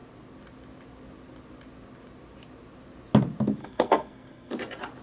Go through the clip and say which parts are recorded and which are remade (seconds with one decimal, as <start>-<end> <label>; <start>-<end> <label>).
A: 0.0-3.6 recorded; 3.6-4.5 remade; 4.5-5.0 recorded